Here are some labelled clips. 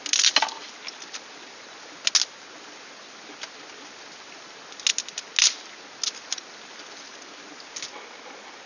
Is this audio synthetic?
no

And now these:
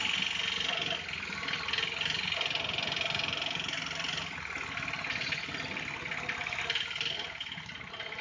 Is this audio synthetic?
no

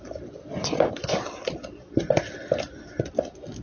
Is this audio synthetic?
no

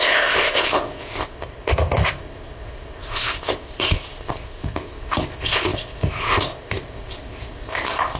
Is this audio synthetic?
yes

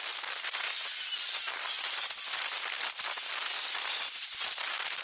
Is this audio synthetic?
no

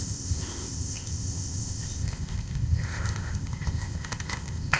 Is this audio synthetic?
yes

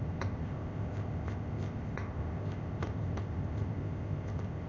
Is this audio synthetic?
yes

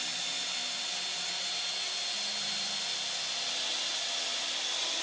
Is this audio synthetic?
no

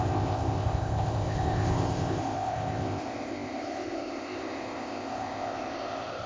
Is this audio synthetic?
yes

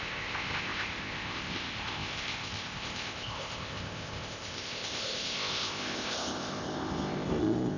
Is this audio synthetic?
yes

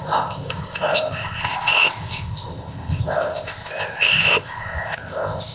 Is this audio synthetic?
yes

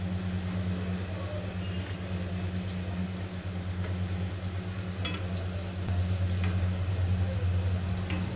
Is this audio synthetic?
no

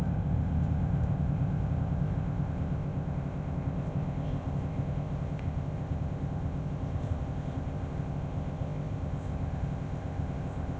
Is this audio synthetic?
yes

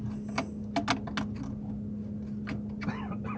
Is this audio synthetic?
no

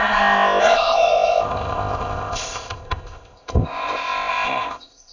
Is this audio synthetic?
yes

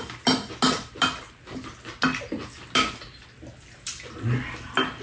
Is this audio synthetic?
no